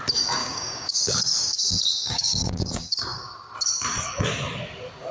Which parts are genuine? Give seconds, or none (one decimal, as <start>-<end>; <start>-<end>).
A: 0.0-0.4; 3.3-5.1